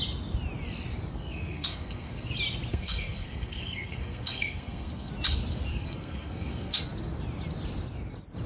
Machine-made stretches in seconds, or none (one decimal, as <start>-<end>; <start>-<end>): 1.1-2.3; 2.7-5.1; 5.7-6.8